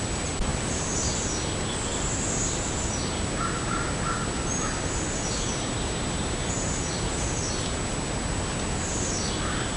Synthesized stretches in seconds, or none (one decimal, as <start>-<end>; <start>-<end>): none